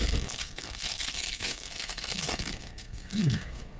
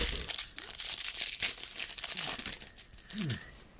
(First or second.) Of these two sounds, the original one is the second